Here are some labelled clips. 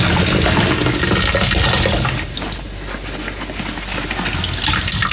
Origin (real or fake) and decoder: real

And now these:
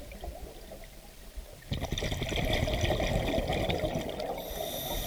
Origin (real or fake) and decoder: real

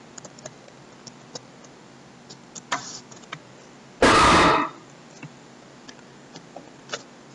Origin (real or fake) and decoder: real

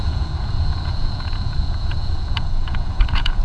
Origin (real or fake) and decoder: fake, vocoder, Vocos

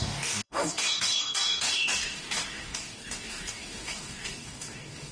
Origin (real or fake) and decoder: fake, codec, DAC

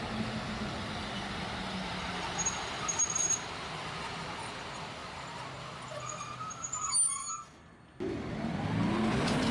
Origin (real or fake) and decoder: real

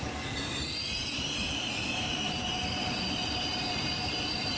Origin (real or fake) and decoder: fake, vocoder, BigVGAN v2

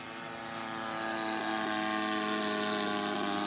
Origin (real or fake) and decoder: real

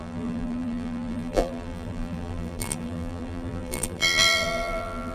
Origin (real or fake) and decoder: fake, vocoder, BigVGAN v2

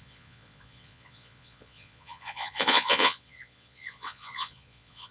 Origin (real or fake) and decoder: fake, vocoder, Vocos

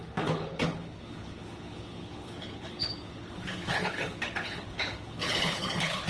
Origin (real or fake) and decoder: fake, codec, HILCodec